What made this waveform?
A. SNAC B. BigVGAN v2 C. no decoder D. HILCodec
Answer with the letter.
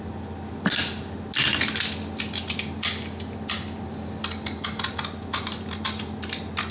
C